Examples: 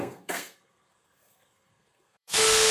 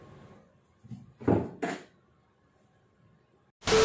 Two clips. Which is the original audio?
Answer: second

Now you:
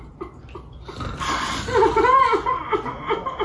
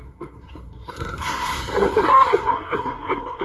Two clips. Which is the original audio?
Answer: first